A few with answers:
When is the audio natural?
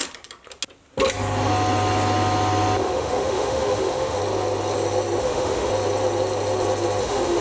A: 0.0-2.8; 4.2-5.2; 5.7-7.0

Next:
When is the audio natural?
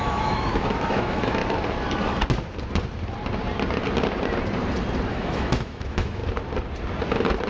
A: 1.4-5.1; 6.2-7.5